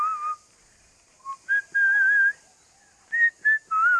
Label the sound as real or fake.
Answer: real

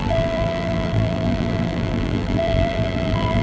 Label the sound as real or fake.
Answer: fake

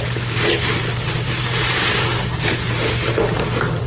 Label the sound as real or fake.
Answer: fake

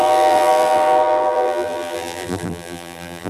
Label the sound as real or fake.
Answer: fake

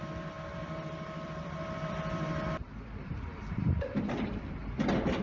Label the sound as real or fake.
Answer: fake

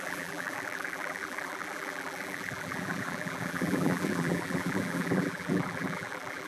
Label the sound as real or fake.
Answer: fake